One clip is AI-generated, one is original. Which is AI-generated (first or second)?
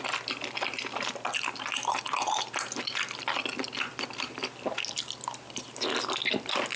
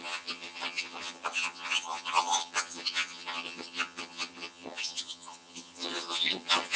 second